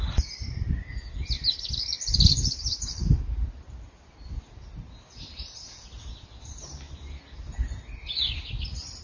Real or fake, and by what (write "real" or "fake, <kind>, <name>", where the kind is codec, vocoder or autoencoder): real